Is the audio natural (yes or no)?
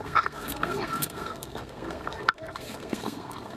no